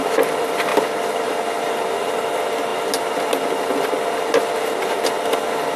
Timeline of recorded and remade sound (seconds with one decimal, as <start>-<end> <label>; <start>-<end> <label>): 0.0-5.8 recorded